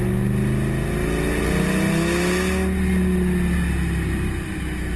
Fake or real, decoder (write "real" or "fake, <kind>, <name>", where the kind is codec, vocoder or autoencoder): real